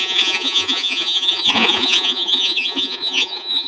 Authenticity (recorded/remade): remade